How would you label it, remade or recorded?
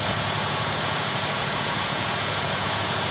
remade